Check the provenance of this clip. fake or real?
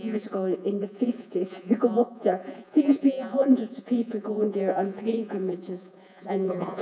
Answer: fake